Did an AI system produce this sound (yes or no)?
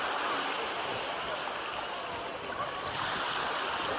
no